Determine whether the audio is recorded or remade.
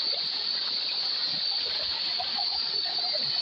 recorded